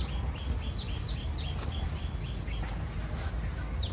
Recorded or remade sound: recorded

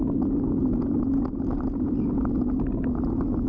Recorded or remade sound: recorded